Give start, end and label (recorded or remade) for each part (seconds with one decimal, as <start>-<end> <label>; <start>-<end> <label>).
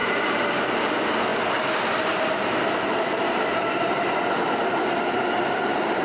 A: 0.0-0.9 remade; 0.9-6.0 recorded